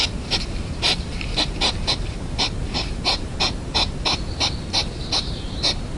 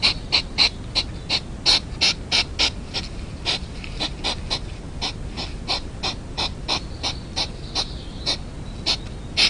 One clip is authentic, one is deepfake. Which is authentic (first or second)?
second